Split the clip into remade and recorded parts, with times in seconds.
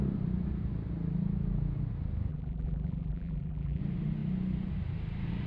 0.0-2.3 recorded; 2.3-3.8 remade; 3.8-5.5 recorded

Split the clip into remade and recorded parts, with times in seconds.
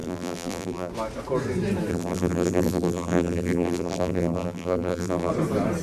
0.0-0.9 remade; 0.9-1.9 recorded; 1.9-5.3 remade; 5.3-5.8 recorded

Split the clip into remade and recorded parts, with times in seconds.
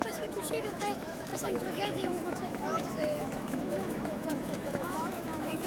0.0-5.7 remade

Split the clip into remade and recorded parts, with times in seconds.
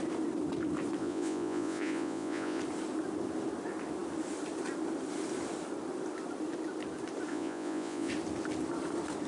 0.0-1.0 recorded; 1.0-2.6 remade; 2.6-7.3 recorded; 7.3-8.1 remade; 8.1-9.3 recorded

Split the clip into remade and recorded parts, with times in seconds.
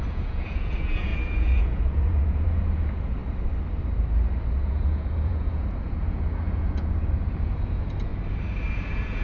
0.0-3.2 remade; 3.2-4.6 recorded; 4.6-8.1 remade; 8.1-8.7 recorded; 8.7-9.2 remade